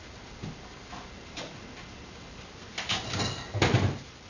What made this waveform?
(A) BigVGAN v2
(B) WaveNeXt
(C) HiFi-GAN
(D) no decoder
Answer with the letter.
D